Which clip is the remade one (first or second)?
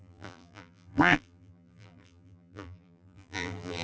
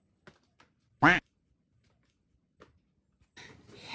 first